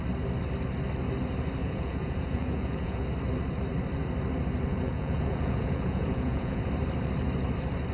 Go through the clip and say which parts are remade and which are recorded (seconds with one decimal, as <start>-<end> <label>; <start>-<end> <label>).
0.0-1.6 recorded; 1.6-3.0 remade; 3.0-4.7 recorded; 4.7-6.7 remade; 6.7-7.9 recorded

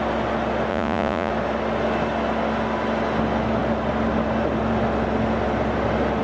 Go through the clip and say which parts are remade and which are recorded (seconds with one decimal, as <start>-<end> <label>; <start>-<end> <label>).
0.0-0.7 recorded; 0.7-1.3 remade; 1.3-6.2 recorded

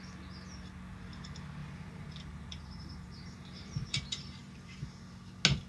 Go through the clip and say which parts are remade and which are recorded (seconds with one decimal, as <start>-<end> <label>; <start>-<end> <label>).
0.0-1.6 recorded; 1.6-5.0 remade; 5.0-5.7 recorded

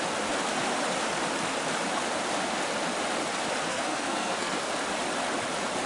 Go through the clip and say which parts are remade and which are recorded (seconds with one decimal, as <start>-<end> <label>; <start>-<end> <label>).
0.0-3.7 recorded; 3.7-4.7 remade; 4.7-5.9 recorded